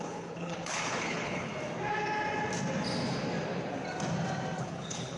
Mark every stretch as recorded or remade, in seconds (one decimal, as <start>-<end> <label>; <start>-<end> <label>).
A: 0.0-1.5 remade; 1.5-4.6 recorded; 4.6-5.2 remade